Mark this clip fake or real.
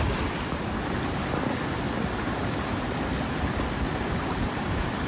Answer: real